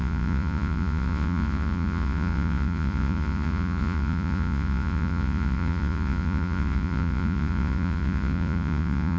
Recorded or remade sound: remade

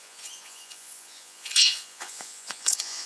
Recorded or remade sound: remade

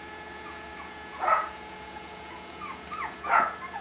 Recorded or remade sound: remade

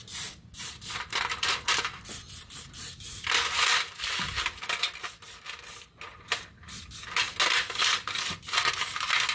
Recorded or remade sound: recorded